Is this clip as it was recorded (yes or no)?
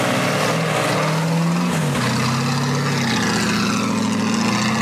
yes